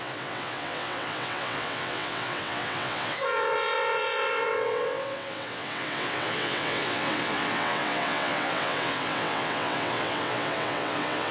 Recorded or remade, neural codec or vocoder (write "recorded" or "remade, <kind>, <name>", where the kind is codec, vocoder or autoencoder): remade, vocoder, WaveNeXt